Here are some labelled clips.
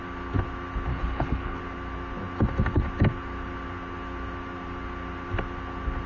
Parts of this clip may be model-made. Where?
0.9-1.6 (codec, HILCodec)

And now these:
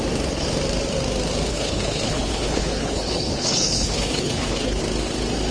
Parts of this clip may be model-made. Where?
1.5-4.8 (codec, HILCodec)

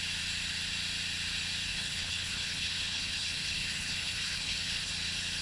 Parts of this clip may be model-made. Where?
1.7-4.9 (codec, HILCodec)

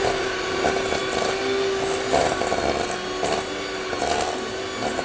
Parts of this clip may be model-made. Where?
none

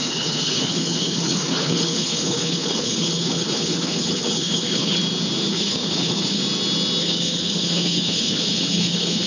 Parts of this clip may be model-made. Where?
0.0-5.0 (codec, HILCodec); 5.5-6.4; 7.0-9.3

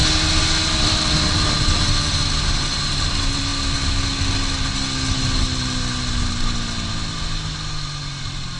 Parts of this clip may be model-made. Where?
none

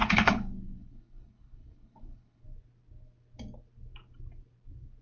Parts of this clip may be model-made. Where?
0.0-2.4 (codec, HILCodec)